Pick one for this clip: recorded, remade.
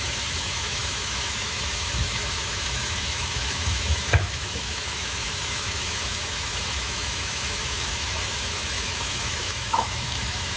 remade